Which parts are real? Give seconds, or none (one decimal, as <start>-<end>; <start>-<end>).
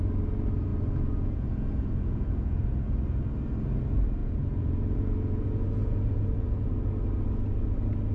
0.0-0.7; 2.7-4.2; 6.7-8.1